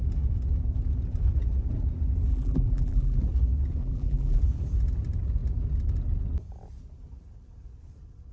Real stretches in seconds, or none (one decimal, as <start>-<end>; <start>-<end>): 0.0-2.3; 3.2-3.8; 4.4-8.3